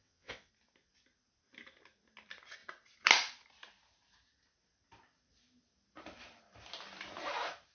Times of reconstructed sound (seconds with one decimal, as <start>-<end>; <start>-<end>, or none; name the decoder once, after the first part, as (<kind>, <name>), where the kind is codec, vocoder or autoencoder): 0.0-0.5 (vocoder, WaveNeXt)